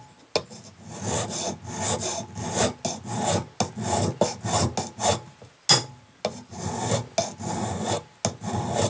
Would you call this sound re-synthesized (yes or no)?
no